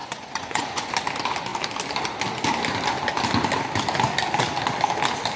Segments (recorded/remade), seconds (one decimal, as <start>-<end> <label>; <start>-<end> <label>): 0.0-0.9 remade; 0.9-5.4 recorded